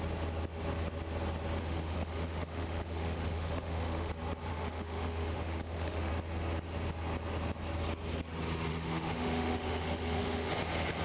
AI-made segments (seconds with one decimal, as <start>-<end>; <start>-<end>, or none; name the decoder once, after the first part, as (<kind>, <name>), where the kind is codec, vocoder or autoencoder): 1.6-4.1 (autoencoder, DAC-VAE); 4.5-6.1; 8.7-10.5